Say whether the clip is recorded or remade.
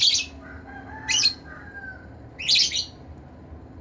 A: recorded